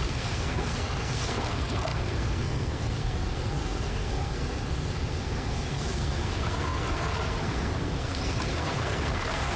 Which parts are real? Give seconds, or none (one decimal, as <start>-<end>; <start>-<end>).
none